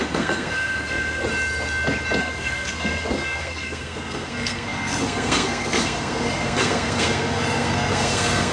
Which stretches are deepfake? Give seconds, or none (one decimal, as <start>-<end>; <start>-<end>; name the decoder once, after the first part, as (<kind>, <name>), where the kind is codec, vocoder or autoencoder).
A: 0.0-1.2 (codec, SNAC); 2.2-8.5